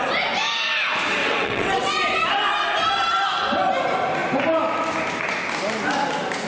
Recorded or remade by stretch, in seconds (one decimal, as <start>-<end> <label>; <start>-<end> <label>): 0.0-1.2 recorded; 1.2-2.0 remade; 2.0-6.5 recorded